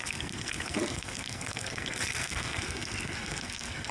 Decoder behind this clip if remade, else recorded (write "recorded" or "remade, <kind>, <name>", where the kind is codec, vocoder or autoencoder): remade, codec, SNAC